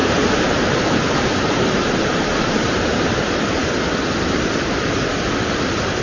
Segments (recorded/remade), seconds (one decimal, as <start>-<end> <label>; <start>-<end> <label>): 0.0-3.0 remade; 3.0-6.0 recorded